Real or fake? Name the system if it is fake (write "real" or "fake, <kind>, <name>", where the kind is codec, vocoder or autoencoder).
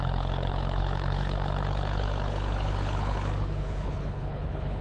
fake, codec, HILCodec